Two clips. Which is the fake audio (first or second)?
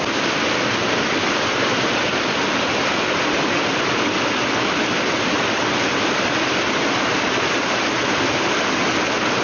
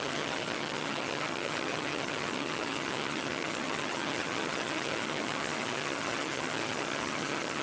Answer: second